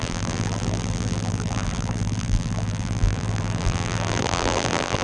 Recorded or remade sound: remade